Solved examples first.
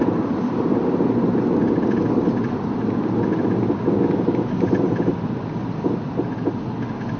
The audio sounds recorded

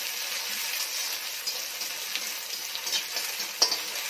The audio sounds recorded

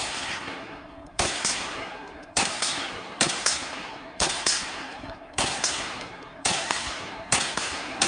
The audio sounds remade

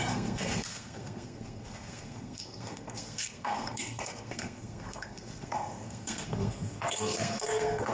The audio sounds remade